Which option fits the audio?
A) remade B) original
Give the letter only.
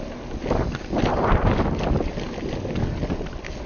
B